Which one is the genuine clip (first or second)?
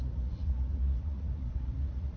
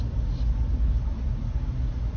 second